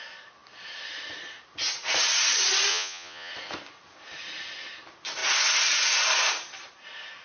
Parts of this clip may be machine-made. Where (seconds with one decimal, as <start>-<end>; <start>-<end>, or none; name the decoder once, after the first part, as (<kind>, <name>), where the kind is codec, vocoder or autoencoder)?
2.7-3.3 (vocoder, Vocos)